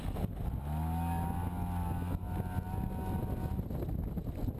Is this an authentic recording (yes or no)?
yes